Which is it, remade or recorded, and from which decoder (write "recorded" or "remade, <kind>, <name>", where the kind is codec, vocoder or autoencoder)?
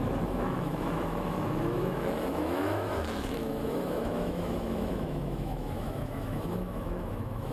remade, autoencoder, DAC-VAE